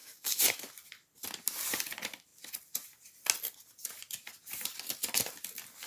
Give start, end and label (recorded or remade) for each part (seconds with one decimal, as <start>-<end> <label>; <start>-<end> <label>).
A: 0.0-0.7 remade; 0.7-5.9 recorded